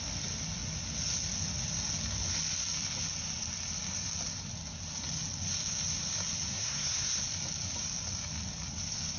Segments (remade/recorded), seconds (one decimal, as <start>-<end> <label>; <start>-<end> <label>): 0.0-6.5 recorded; 6.5-7.2 remade; 7.2-9.2 recorded